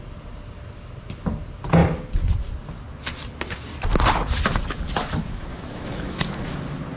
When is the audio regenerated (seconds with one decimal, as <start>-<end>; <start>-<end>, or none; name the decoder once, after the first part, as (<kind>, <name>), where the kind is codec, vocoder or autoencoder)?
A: 5.5-6.2 (autoencoder, DAC-VAE)